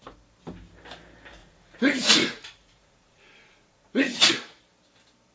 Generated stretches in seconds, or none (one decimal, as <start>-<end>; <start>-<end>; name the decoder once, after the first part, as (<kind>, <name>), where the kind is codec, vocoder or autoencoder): 1.4-4.3 (vocoder, Vocos)